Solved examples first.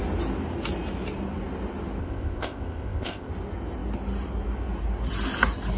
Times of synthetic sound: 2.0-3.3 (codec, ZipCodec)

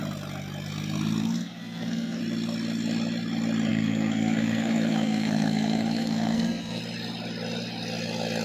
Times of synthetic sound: 1.2-2.2 (codec, SNAC); 3.7-6.8

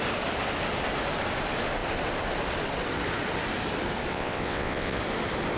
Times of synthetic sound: 4.1-5.0 (vocoder, WaveNeXt)

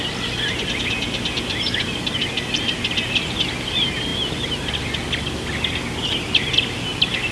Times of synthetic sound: none